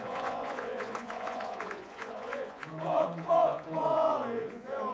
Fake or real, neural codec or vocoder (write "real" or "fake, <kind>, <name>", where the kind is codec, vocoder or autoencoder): fake, vocoder, Vocos